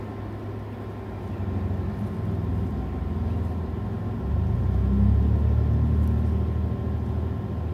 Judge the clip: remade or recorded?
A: recorded